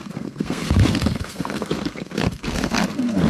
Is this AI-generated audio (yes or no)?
yes